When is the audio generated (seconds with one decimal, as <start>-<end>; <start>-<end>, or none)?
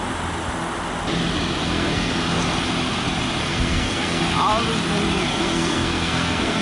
1.6-2.1; 3.4-4.2; 5.3-6.6